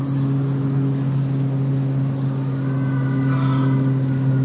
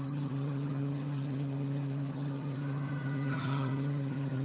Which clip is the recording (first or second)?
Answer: first